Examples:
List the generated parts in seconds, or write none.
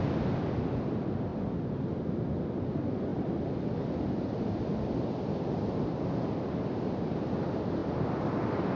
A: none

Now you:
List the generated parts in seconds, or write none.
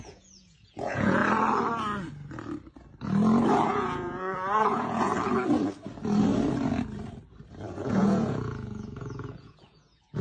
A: 0.0-1.2 (vocoder, Vocos); 3.7-5.1; 7.8-10.2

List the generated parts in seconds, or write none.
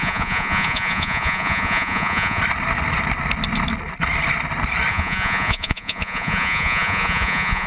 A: 0.0-2.4 (vocoder, Vocos); 4.9-7.7